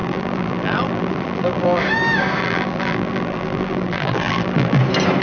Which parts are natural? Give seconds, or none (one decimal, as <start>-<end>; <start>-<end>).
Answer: 1.8-2.4; 4.8-5.2